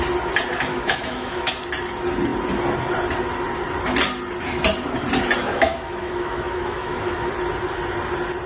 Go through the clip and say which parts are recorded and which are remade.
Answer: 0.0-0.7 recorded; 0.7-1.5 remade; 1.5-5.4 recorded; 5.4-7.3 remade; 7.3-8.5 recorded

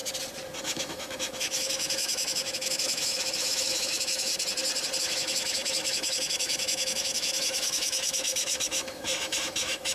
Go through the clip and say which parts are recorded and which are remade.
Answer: 0.0-0.6 recorded; 0.6-4.3 remade; 4.3-5.0 recorded; 5.0-9.9 remade

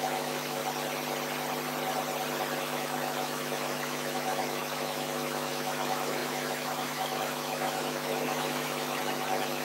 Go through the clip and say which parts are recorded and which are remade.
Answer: 0.0-0.6 remade; 0.6-2.6 recorded; 2.6-9.6 remade

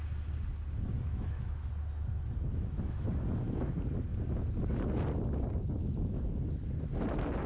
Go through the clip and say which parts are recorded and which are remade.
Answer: 0.0-1.1 recorded; 1.1-1.7 remade; 1.7-2.5 recorded; 2.5-3.1 remade; 3.1-7.5 recorded